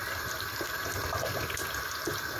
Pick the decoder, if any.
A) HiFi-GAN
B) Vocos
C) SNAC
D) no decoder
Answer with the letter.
D